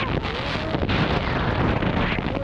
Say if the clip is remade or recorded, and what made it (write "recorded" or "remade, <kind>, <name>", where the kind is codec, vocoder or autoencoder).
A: recorded